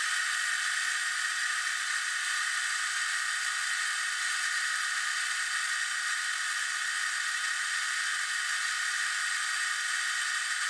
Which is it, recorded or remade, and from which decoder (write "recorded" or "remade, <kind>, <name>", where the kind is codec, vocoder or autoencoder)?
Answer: recorded